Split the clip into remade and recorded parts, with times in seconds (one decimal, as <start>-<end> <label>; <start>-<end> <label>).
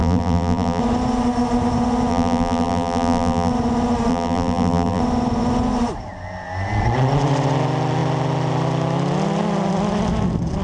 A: 0.0-0.8 remade; 0.8-2.1 recorded; 2.1-3.5 remade; 3.5-4.1 recorded; 4.1-5.0 remade; 5.0-10.6 recorded